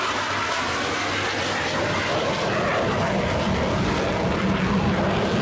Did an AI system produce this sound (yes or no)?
no